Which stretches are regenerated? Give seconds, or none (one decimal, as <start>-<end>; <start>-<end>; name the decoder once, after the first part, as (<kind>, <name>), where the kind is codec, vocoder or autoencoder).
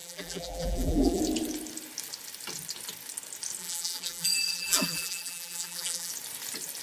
0.0-1.2 (vocoder, BigVGAN v2); 3.6-6.1